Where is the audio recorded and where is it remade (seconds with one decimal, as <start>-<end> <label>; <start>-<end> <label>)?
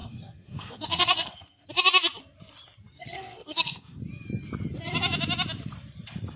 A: 0.0-1.7 remade; 1.7-2.9 recorded; 2.9-4.0 remade; 4.0-6.4 recorded